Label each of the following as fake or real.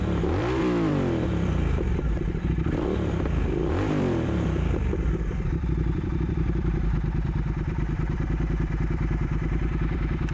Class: fake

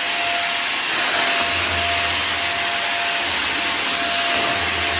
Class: real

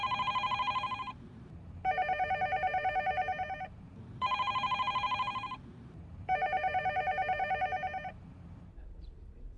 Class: fake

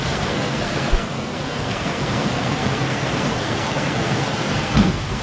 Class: fake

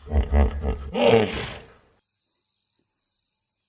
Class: real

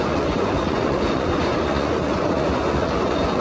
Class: fake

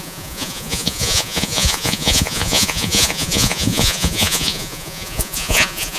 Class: fake